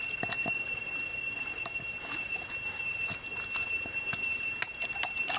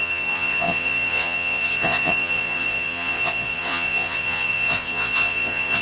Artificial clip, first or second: second